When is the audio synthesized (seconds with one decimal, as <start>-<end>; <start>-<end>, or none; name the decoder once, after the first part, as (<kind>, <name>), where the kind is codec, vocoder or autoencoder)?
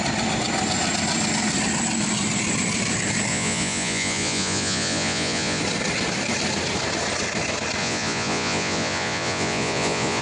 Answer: 3.3-5.6 (vocoder, Vocos); 7.8-10.2